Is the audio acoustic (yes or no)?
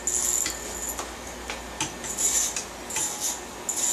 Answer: yes